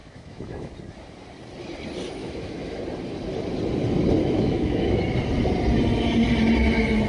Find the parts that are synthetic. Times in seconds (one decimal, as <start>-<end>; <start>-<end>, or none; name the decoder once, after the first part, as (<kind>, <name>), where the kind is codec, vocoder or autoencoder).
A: 0.0-0.7 (autoencoder, DAC-VAE); 2.2-2.8; 4.2-5.0